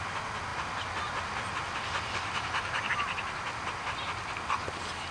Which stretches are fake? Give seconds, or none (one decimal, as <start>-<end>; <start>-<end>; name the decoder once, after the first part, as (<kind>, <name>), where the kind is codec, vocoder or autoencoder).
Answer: none